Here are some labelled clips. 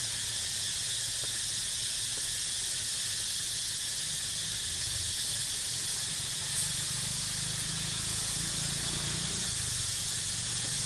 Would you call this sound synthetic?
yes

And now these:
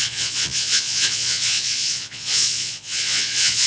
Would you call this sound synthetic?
yes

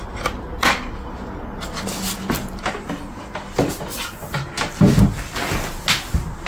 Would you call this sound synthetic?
no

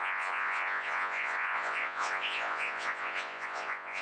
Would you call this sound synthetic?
yes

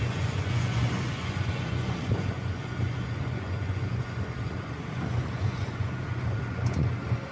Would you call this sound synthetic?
yes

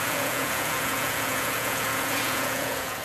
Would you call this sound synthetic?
yes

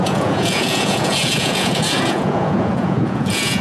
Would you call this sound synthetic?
yes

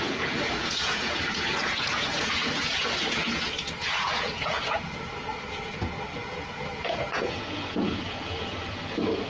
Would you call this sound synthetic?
yes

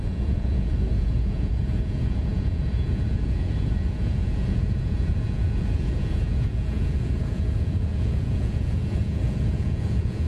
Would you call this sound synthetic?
yes